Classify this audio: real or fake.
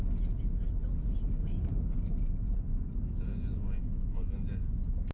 real